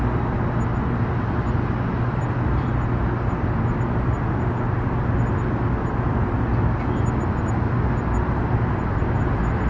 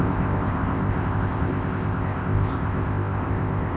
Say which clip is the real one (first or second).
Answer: first